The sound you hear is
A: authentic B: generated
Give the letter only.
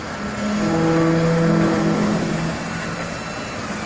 A